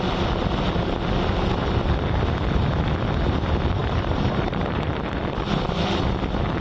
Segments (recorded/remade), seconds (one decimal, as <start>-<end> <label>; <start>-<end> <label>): 0.0-3.8 recorded; 3.8-5.2 remade; 5.2-6.6 recorded